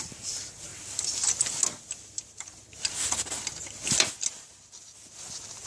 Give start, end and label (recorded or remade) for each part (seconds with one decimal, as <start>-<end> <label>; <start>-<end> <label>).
0.0-0.7 recorded; 0.7-4.1 remade; 4.1-5.7 recorded